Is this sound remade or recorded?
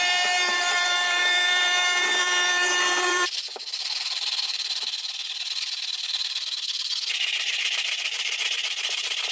remade